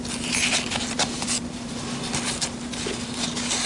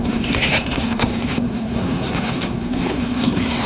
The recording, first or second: first